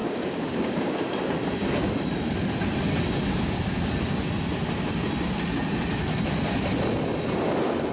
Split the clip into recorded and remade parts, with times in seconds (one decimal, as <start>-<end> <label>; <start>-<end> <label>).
0.0-1.1 remade; 1.1-7.9 recorded